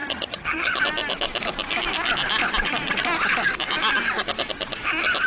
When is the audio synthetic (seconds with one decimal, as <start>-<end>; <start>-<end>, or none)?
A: 0.0-0.8